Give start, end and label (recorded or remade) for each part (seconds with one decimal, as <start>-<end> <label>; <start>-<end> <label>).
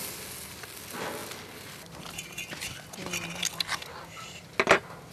0.0-5.1 recorded